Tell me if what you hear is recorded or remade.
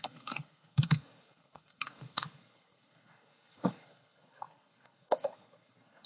remade